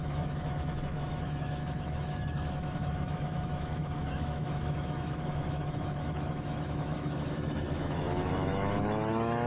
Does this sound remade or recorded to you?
remade